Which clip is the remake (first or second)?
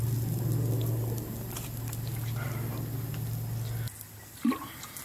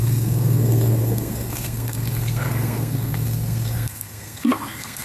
second